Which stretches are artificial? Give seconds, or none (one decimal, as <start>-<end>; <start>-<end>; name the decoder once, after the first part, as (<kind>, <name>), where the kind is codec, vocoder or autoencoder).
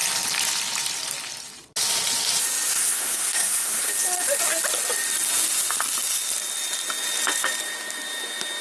2.7-3.9 (codec, SNAC)